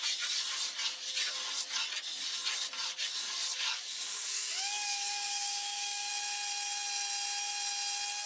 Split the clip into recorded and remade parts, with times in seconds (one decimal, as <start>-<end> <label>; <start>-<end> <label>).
0.0-3.5 recorded; 3.5-6.1 remade; 6.1-8.3 recorded